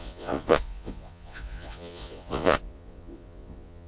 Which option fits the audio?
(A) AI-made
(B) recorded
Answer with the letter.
A